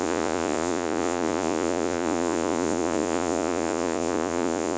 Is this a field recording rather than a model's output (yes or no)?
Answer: no